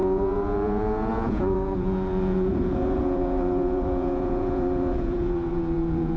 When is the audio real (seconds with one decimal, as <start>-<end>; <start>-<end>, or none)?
none

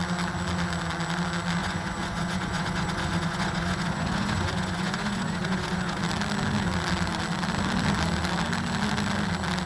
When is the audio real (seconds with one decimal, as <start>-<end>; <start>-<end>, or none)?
0.0-1.6; 6.0-9.7

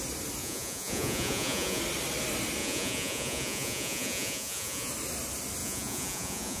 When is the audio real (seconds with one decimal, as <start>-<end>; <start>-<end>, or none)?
0.0-0.4; 1.8-2.6; 4.9-5.6